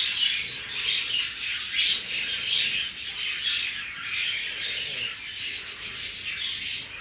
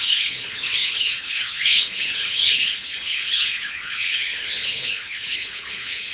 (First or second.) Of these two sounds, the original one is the first